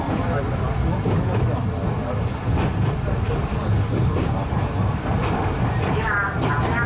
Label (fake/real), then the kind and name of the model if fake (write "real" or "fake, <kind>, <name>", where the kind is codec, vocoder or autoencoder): fake, vocoder, BigVGAN v2